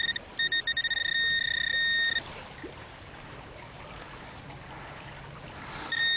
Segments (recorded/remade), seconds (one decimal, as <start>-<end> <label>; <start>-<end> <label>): 0.0-6.2 recorded